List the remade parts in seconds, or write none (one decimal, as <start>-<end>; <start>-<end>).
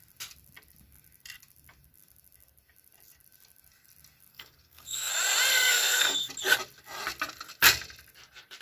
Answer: 4.3-5.1; 5.5-6.3